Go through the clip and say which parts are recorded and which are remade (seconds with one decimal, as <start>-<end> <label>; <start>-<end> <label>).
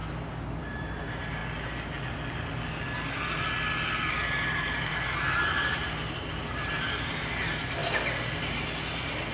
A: 0.0-0.6 recorded; 0.6-1.4 remade; 1.4-4.1 recorded; 4.1-7.8 remade; 7.8-8.4 recorded; 8.4-9.3 remade